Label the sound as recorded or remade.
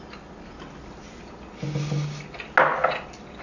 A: recorded